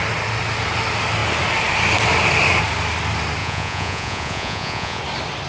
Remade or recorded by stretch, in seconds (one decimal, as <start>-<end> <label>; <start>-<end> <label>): 0.0-3.4 recorded; 3.4-5.0 remade; 5.0-5.5 recorded